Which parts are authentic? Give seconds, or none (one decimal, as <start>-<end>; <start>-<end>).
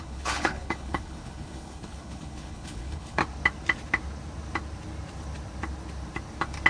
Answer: 3.2-6.7